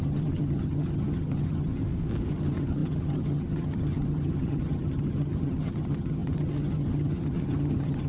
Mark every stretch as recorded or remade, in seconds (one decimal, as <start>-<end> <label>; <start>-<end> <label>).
0.0-1.8 remade; 1.8-2.3 recorded; 2.3-8.1 remade